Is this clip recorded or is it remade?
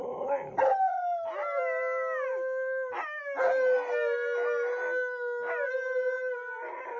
recorded